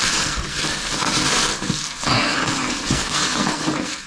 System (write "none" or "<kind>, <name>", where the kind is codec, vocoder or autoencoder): codec, SNAC